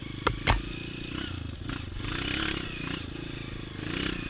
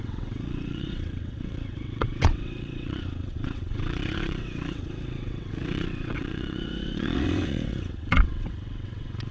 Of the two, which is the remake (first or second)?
second